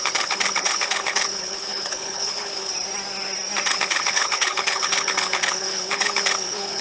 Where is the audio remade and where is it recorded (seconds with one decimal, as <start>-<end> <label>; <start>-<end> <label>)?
0.0-2.7 remade; 2.7-3.7 recorded; 3.7-6.8 remade